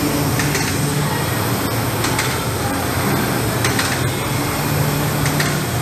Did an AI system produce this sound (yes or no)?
no